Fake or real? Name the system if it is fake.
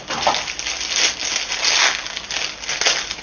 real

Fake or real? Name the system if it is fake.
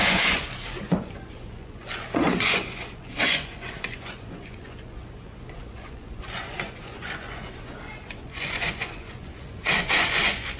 fake, vocoder, Vocos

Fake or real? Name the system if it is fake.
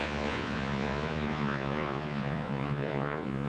fake, vocoder, Vocos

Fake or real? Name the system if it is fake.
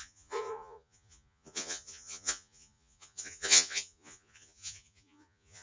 fake, vocoder, Vocos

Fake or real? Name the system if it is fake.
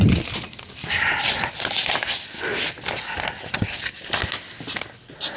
real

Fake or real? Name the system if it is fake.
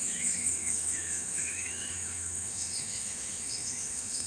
fake, autoencoder, DAC-VAE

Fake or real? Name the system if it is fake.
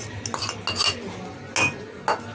real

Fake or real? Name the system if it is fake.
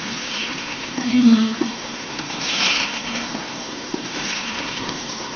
fake, codec, SNAC